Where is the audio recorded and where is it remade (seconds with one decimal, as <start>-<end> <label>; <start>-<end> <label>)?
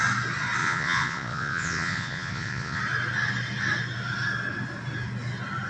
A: 0.0-0.6 recorded; 0.6-2.8 remade; 2.8-5.7 recorded